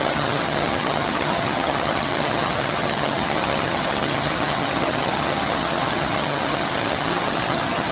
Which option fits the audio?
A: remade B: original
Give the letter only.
A